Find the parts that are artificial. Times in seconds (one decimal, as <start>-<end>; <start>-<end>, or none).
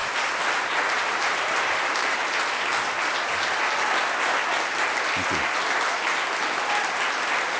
1.0-2.7